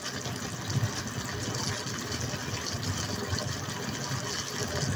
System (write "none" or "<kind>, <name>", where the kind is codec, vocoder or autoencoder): none